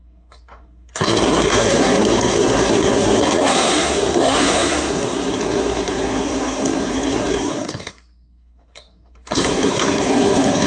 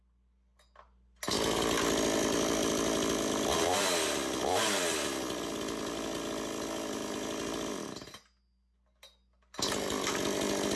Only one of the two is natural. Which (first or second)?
second